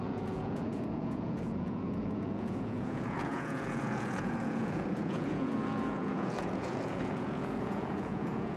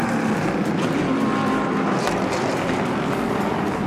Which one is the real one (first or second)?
second